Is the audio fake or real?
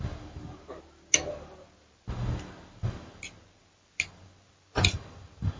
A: real